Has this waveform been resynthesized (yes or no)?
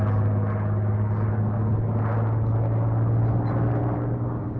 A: no